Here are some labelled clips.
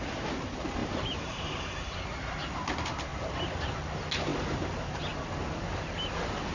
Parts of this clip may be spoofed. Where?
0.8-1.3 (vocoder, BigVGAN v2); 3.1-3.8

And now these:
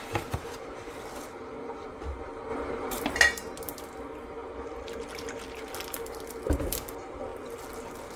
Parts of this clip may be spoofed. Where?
2.5-3.2 (vocoder, BigVGAN v2)

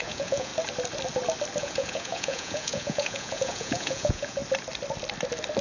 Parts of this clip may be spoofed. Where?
0.0-0.5 (vocoder, Vocos); 1.6-4.4

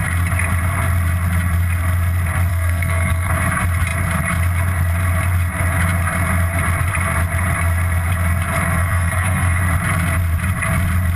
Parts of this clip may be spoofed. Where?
2.5-3.3 (codec, SNAC); 8.8-9.6

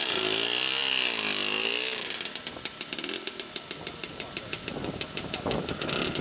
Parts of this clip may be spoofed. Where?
none

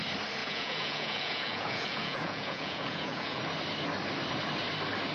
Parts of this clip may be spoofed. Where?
0.4-3.4 (vocoder, Vocos)